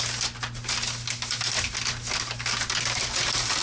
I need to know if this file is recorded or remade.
recorded